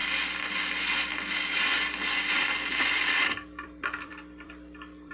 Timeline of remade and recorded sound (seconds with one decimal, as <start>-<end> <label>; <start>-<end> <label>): 0.0-2.5 recorded; 2.5-5.1 remade